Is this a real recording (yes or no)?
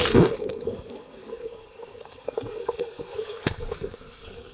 no